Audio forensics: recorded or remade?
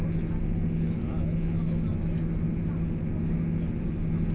recorded